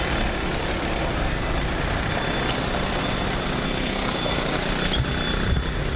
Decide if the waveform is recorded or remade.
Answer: recorded